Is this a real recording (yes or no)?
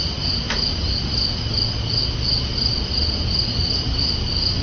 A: yes